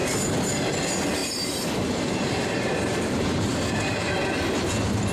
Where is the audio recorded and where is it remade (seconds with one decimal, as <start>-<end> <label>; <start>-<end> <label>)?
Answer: 0.0-1.2 recorded; 1.2-4.3 remade; 4.3-5.1 recorded